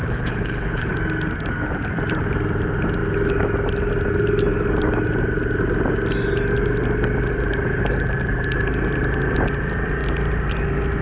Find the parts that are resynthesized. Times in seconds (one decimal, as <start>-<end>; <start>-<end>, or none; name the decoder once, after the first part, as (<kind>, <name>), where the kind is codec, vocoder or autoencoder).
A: 0.0-0.9 (codec, HILCodec)